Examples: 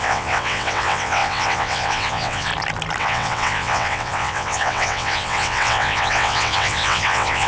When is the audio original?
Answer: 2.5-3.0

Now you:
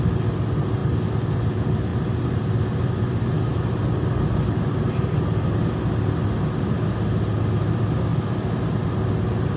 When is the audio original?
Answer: 0.0-9.6

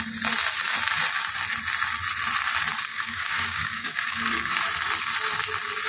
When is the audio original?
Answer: 0.0-2.9; 4.6-5.9

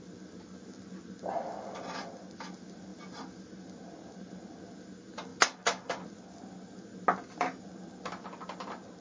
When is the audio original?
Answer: 0.0-9.0